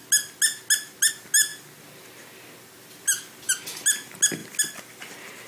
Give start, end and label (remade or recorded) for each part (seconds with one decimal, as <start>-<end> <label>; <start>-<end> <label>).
0.0-5.5 recorded